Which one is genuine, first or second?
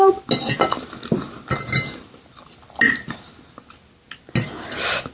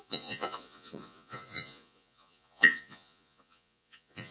first